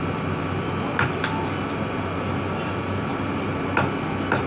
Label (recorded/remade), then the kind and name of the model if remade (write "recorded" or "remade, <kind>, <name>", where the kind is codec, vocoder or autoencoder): recorded